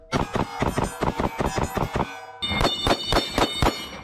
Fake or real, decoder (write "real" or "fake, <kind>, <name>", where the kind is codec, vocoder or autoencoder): real